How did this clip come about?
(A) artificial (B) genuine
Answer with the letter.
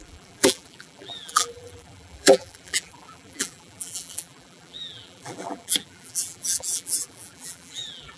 A